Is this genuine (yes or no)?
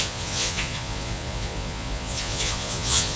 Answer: no